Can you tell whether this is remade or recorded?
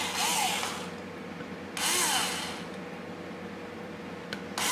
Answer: recorded